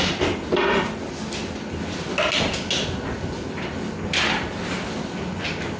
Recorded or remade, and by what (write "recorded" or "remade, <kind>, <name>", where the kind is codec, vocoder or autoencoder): recorded